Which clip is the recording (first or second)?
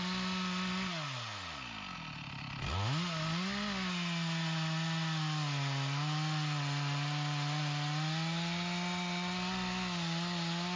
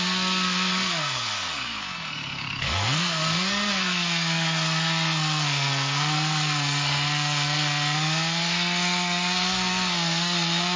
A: first